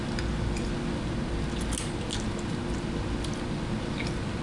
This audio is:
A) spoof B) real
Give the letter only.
B